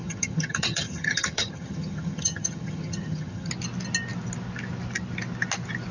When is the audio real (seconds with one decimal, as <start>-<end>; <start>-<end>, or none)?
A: 3.5-5.9

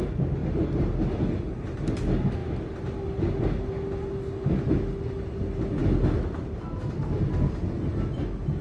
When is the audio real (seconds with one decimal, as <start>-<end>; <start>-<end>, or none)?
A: 0.0-8.6

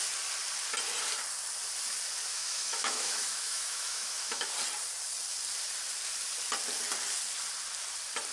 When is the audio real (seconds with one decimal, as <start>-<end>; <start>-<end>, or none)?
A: 0.0-2.3; 4.5-8.3

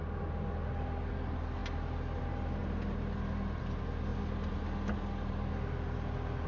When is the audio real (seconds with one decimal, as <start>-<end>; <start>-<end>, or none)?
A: 0.0-6.5

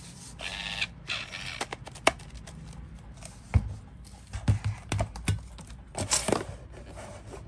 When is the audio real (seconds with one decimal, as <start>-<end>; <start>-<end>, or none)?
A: 0.0-7.5

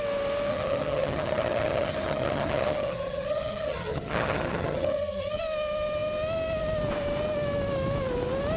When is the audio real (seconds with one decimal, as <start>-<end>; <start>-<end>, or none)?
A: 0.0-0.5; 5.4-8.6

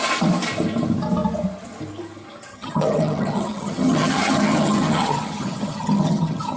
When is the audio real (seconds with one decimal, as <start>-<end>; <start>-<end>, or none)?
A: 0.0-2.5